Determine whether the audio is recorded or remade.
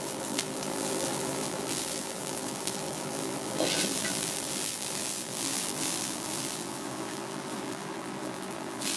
remade